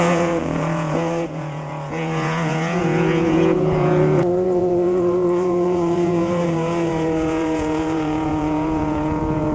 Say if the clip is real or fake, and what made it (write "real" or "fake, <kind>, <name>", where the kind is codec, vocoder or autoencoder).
fake, vocoder, Vocos